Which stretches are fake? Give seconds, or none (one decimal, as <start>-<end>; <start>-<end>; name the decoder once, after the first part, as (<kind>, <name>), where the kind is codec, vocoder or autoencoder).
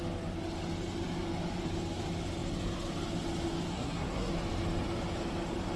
3.7-4.3 (codec, SNAC)